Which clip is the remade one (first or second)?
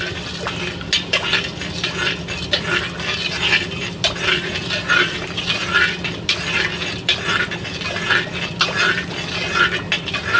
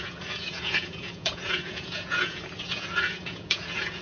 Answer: second